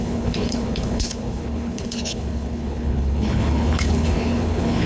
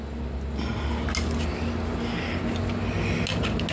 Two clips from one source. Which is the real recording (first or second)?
second